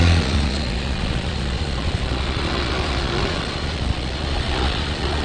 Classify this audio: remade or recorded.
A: remade